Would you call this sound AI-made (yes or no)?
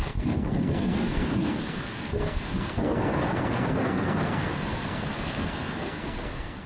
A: yes